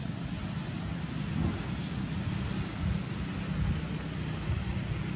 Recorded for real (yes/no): yes